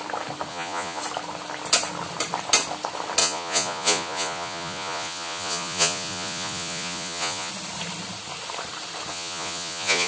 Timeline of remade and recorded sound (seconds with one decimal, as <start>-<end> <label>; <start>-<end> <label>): 0.0-0.5 recorded; 0.5-1.0 remade; 1.0-3.2 recorded; 3.2-7.5 remade; 7.5-9.1 recorded; 9.1-10.1 remade